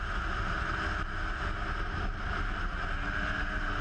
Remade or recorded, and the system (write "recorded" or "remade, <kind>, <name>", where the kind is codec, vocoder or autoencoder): recorded